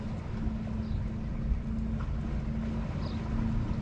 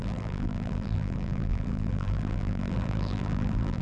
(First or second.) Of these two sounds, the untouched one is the first